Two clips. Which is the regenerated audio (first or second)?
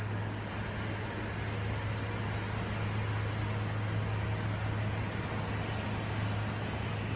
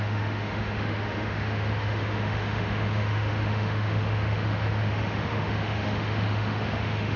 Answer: second